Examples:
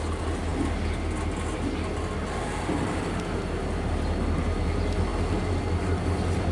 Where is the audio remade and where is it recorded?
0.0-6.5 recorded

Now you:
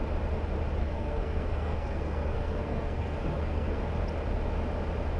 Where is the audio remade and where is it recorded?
0.0-0.8 recorded; 0.8-3.8 remade; 3.8-5.2 recorded

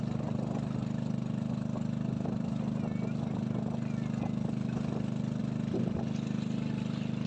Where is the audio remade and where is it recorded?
0.0-7.3 recorded

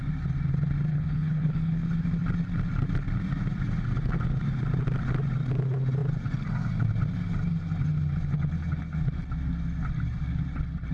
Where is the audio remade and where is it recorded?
0.0-0.9 recorded; 0.9-1.7 remade; 1.7-10.9 recorded

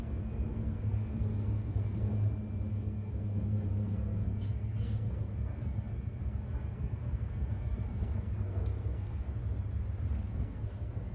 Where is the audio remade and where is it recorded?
0.0-2.1 remade; 2.1-2.7 recorded; 2.7-9.4 remade; 9.4-10.1 recorded; 10.1-11.1 remade

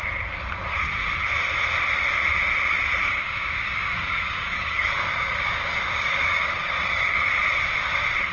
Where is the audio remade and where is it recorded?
0.0-3.0 recorded; 3.0-7.3 remade; 7.3-8.3 recorded

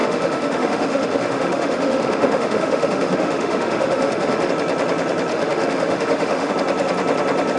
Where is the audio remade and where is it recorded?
0.0-4.5 remade; 4.5-5.3 recorded; 5.3-6.5 remade; 6.5-7.6 recorded

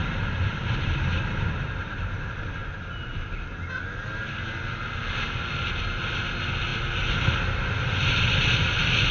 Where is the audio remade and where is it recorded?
0.0-2.1 remade; 2.1-9.1 recorded